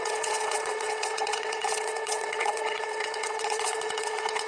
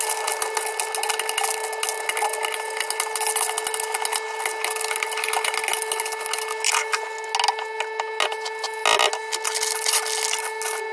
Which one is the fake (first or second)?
first